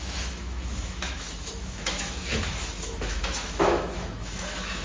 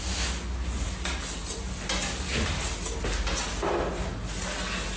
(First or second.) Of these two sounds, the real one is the second